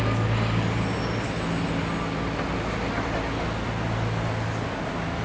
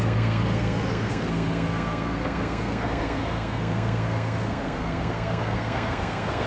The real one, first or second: first